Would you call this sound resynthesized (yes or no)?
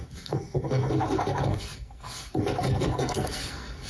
yes